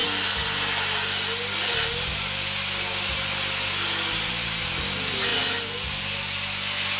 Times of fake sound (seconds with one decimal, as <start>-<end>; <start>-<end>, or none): none